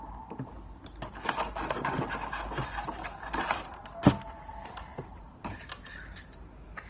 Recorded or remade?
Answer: recorded